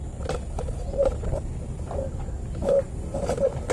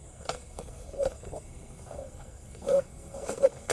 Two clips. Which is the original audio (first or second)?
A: first